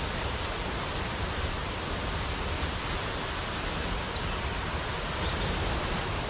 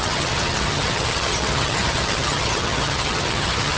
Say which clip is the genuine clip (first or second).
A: first